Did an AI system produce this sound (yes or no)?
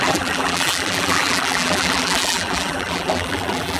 yes